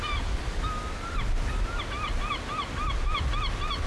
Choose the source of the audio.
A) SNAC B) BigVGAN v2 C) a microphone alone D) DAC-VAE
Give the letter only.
C